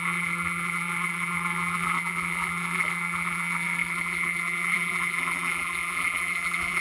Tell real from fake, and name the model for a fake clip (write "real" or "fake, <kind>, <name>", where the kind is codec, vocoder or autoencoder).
fake, vocoder, BigVGAN v2